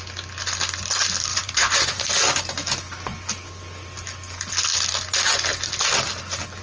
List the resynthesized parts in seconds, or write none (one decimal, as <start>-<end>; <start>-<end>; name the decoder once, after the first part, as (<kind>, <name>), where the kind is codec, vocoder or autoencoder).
1.3-2.1 (vocoder, Vocos)